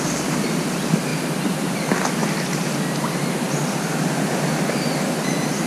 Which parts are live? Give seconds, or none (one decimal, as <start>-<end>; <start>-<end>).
0.0-5.7